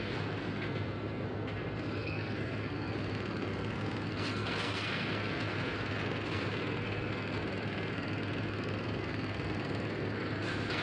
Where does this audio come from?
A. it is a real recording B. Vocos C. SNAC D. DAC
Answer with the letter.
C